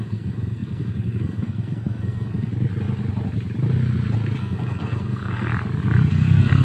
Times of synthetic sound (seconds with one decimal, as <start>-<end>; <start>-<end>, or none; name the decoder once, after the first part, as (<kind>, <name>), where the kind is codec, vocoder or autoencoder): 0.0-2.5 (codec, SNAC); 4.4-5.5; 6.1-6.6